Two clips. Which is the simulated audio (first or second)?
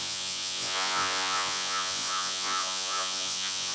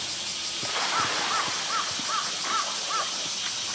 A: first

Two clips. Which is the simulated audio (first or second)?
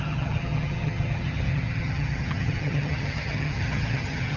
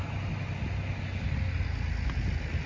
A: first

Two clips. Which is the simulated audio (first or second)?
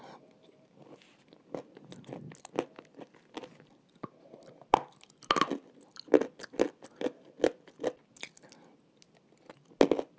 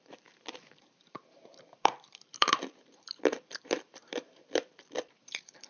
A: second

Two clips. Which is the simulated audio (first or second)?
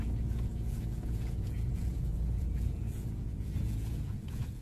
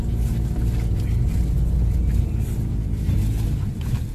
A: first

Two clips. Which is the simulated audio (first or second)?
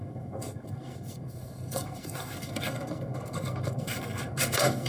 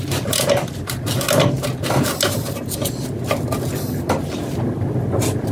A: first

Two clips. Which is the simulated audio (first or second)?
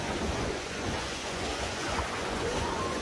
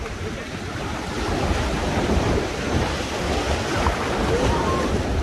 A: first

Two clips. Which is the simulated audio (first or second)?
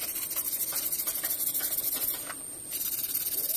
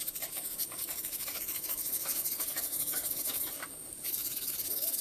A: second